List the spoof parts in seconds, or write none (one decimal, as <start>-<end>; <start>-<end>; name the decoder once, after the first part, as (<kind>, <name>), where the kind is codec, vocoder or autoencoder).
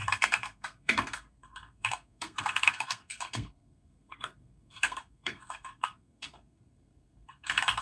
0.0-7.8 (codec, SNAC)